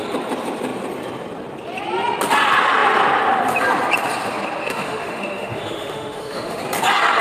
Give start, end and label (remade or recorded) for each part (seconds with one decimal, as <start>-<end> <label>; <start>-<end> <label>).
0.0-4.6 recorded; 4.6-6.6 remade; 6.6-7.2 recorded